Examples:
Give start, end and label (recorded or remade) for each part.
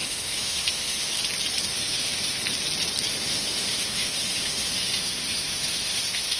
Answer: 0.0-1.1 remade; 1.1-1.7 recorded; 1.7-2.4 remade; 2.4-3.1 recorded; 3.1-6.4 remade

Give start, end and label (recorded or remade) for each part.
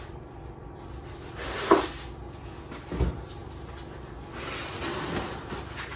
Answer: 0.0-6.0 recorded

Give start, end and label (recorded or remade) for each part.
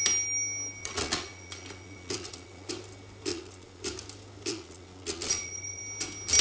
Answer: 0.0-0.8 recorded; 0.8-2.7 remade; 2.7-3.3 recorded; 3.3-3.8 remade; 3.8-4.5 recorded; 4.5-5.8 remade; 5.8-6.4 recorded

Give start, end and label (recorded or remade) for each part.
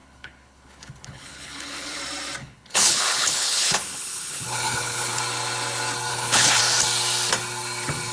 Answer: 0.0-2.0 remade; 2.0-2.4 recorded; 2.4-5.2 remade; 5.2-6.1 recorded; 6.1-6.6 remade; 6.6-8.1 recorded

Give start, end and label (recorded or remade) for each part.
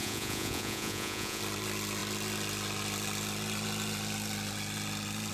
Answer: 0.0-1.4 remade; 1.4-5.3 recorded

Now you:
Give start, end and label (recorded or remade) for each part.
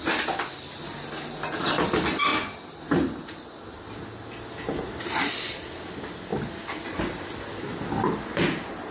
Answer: 0.0-8.9 recorded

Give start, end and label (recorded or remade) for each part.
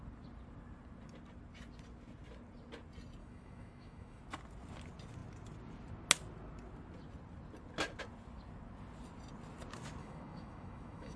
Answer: 0.0-3.2 recorded; 3.2-4.2 remade; 4.2-10.0 recorded; 10.0-11.2 remade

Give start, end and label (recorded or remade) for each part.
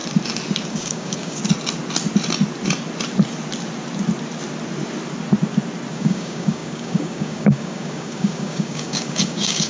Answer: 0.0-0.7 recorded; 0.7-1.4 remade; 1.4-5.9 recorded; 5.9-9.7 remade